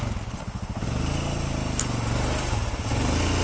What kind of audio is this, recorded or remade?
recorded